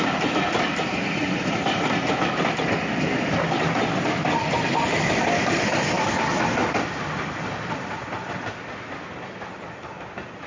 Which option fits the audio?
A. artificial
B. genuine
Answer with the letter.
B